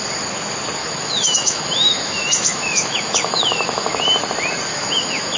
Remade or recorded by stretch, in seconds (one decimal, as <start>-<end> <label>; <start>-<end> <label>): 0.0-0.8 recorded; 0.8-4.0 remade; 4.0-4.7 recorded; 4.7-5.4 remade

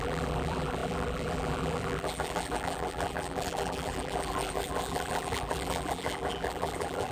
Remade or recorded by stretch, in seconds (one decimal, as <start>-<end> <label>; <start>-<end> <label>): 0.0-7.1 remade